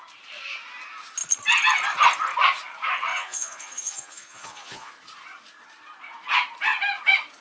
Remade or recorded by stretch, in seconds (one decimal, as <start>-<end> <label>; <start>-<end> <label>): 0.0-3.1 recorded; 3.1-4.9 remade; 4.9-7.4 recorded